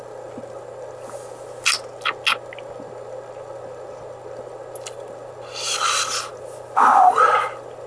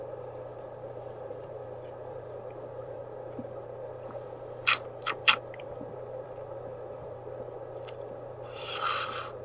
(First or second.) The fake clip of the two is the second